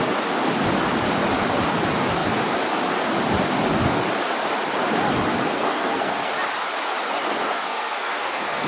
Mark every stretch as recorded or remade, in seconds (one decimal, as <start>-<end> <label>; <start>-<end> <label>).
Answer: 0.0-5.4 recorded; 5.4-6.3 remade; 6.3-7.4 recorded; 7.4-8.7 remade